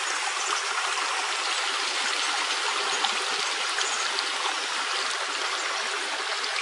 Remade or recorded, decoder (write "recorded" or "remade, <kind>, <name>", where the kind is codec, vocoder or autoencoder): recorded